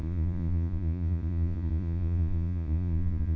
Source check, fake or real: fake